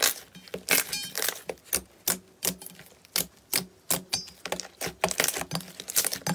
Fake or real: real